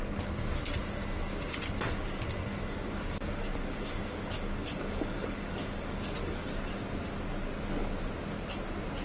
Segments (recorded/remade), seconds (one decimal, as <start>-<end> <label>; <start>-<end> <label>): 0.0-2.4 recorded; 2.4-6.7 remade; 6.7-9.0 recorded